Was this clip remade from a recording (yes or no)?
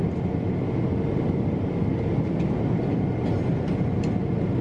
no